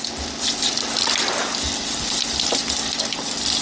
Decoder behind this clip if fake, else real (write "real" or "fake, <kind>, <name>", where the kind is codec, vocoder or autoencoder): real